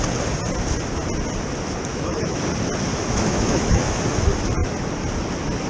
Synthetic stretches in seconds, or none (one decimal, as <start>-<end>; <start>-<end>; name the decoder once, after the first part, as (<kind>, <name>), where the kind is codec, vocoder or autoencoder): 1.9-2.4 (autoencoder, DAC-VAE); 2.9-4.0

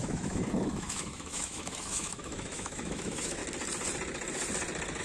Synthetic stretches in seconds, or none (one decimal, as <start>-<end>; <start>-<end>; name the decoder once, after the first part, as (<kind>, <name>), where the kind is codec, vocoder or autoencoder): 0.0-3.4 (autoencoder, DAC-VAE)

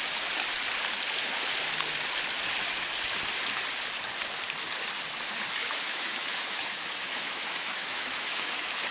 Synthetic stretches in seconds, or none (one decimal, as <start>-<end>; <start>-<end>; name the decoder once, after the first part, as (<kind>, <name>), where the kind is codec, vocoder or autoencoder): 5.6-8.5 (autoencoder, DAC-VAE)

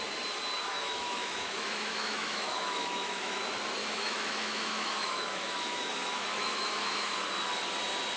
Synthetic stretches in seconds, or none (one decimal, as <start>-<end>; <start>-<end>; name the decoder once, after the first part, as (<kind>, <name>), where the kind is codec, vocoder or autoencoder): 0.7-3.4 (autoencoder, DAC-VAE); 3.8-7.1